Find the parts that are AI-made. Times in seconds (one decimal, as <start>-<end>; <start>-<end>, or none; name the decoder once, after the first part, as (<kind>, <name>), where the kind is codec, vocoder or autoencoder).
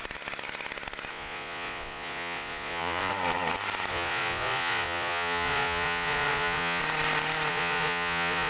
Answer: 1.1-3.1 (vocoder, Vocos); 3.9-6.8; 7.5-8.5